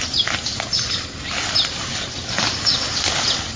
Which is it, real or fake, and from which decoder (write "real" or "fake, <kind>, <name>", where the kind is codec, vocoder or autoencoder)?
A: real